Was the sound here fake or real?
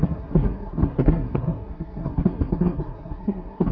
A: fake